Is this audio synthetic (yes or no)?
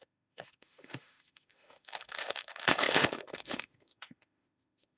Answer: yes